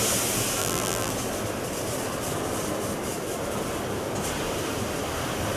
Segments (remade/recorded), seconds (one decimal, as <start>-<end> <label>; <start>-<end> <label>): 0.0-0.6 recorded; 0.6-1.1 remade; 1.1-5.6 recorded